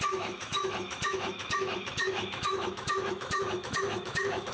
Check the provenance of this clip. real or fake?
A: fake